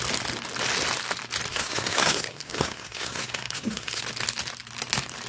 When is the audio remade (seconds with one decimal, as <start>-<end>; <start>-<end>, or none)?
1.5-4.0